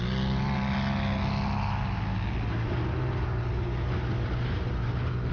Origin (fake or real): real